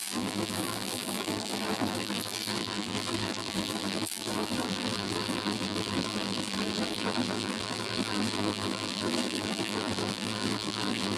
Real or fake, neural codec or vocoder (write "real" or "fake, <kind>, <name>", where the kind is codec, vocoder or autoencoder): fake, vocoder, BigVGAN v2